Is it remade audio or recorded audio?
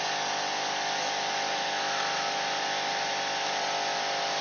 recorded